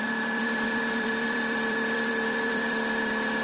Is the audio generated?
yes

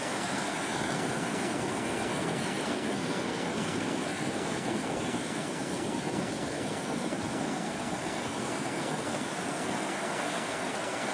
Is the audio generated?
yes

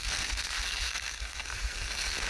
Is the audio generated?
yes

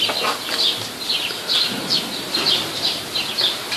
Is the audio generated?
no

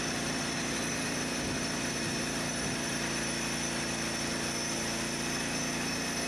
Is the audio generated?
no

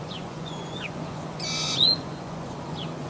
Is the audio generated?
yes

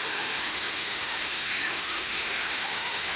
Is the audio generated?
yes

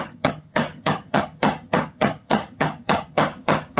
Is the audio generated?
yes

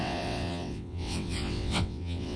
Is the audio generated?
yes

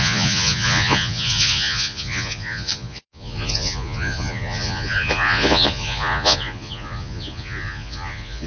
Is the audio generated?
yes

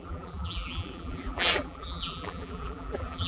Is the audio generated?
yes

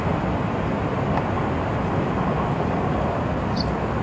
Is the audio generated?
no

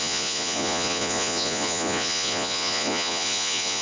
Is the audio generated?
yes